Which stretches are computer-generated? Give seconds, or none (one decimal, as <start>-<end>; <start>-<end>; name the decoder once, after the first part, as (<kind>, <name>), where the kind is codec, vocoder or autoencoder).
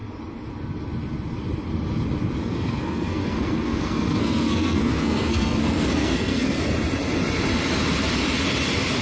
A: 2.4-6.6 (codec, SNAC)